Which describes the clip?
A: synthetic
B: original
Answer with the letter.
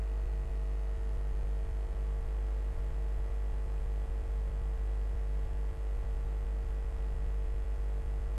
A